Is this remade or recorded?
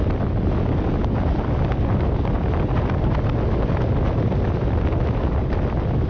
recorded